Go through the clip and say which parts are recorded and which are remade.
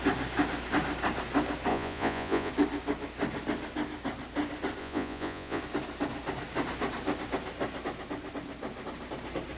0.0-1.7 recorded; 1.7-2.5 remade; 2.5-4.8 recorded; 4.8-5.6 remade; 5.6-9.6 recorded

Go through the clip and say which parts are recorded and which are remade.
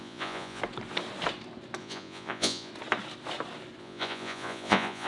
0.0-0.6 remade; 0.6-1.8 recorded; 1.8-2.7 remade; 2.7-3.8 recorded; 3.8-5.1 remade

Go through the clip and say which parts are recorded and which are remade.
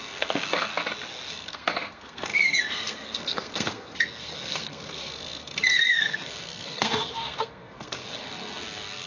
0.0-0.7 remade; 0.7-1.3 recorded; 1.3-9.1 remade